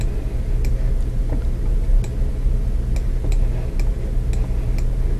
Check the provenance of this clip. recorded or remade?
recorded